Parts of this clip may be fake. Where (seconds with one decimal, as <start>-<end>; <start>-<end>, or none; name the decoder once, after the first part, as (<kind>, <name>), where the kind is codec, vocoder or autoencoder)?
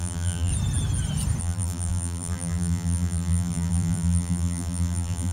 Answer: 0.0-0.5 (vocoder, BigVGAN v2); 1.4-5.3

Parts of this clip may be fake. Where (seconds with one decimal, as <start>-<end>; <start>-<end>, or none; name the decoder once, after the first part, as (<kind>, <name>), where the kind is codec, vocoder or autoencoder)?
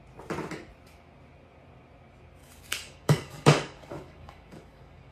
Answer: 2.4-5.1 (codec, DAC)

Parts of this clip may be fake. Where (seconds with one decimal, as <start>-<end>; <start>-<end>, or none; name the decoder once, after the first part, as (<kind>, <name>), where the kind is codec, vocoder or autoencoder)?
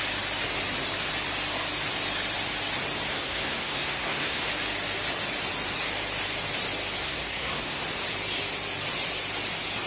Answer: 3.1-4.5 (codec, SNAC); 7.0-7.8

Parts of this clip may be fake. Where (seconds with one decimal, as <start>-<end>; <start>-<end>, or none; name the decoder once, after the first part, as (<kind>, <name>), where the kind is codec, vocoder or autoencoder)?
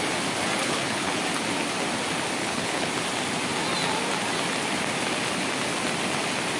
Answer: 0.6-1.2 (codec, HILCodec); 2.4-2.9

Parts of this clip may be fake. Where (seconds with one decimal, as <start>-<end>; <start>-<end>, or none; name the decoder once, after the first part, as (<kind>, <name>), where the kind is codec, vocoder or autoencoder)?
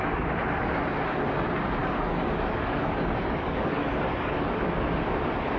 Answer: 1.8-4.6 (codec, DAC)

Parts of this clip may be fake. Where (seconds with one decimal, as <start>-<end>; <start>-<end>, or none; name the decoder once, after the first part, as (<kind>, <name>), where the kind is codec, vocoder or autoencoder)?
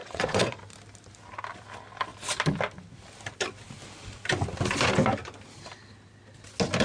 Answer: 0.0-0.6 (vocoder, WaveNeXt)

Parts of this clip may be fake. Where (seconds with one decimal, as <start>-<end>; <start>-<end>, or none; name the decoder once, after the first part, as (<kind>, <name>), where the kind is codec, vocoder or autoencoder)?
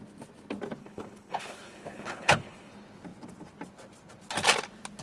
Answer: 0.8-2.7 (codec, HILCodec)